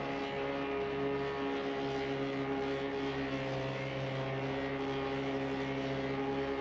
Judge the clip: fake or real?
real